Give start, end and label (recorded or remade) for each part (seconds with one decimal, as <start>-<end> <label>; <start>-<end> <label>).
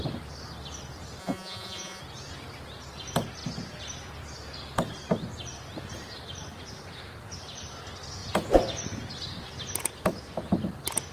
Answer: 0.0-1.2 recorded; 1.2-2.0 remade; 2.0-11.1 recorded